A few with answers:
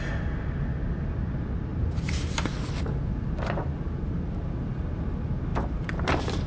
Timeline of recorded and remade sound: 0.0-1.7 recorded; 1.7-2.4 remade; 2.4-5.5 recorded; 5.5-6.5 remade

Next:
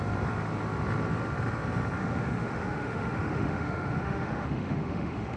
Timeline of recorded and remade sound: 0.0-2.0 recorded; 2.0-5.4 remade

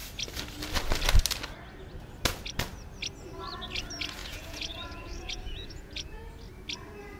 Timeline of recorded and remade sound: 0.0-4.2 recorded; 4.2-6.3 remade; 6.3-7.2 recorded

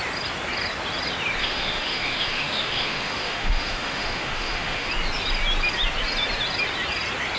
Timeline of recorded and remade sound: 0.0-1.4 recorded; 1.4-4.9 remade; 4.9-7.4 recorded

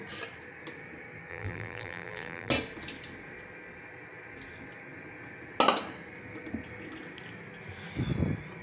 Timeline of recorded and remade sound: 0.0-1.3 recorded; 1.3-2.5 remade; 2.5-8.6 recorded